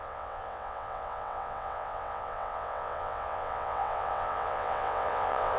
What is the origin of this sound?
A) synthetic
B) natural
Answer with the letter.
A